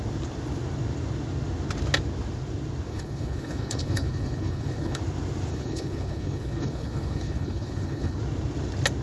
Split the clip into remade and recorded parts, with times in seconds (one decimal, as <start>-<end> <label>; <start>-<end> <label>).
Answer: 0.0-2.9 recorded; 2.9-5.0 remade; 5.0-5.5 recorded; 5.5-8.2 remade; 8.2-9.0 recorded